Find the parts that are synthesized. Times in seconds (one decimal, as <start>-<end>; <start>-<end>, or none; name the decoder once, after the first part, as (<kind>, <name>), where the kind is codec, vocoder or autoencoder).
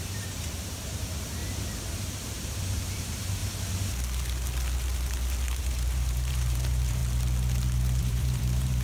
0.0-1.4 (vocoder, BigVGAN v2); 2.0-3.4; 5.6-7.0; 8.0-8.8